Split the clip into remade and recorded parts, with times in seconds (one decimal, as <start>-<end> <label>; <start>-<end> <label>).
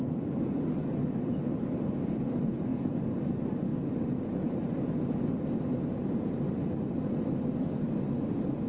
0.0-8.7 recorded